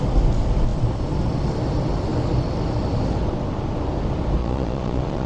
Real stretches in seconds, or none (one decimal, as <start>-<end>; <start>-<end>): 0.0-4.4